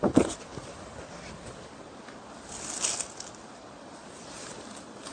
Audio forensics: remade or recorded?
recorded